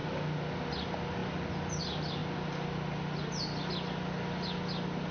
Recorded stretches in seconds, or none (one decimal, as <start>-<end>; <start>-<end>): 0.0-5.1